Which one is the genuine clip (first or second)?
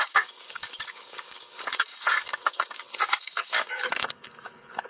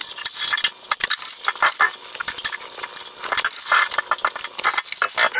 second